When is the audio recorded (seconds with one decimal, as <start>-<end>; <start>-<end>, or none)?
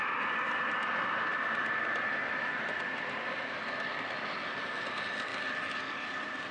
0.0-6.5